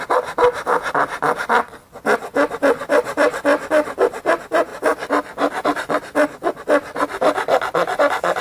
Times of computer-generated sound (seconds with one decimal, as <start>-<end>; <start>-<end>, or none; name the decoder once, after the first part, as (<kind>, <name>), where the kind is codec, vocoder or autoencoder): none